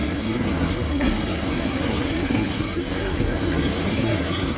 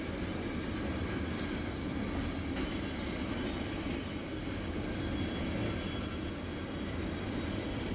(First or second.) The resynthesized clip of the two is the first